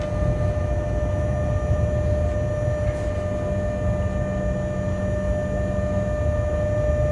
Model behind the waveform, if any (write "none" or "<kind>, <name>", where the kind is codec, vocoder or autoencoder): none